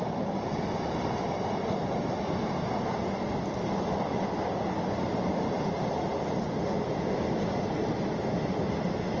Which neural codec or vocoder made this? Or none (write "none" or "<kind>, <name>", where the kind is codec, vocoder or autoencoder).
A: none